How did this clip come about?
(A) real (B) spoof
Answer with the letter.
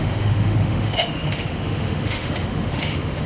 B